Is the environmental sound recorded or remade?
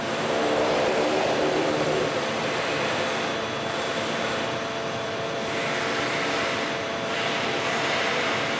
remade